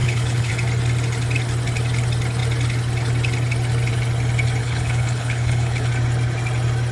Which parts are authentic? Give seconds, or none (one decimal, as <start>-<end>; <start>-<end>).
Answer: 0.5-4.6; 5.9-6.9